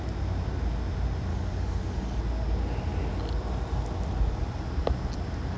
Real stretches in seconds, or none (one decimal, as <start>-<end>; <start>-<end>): 0.0-1.3; 2.2-5.6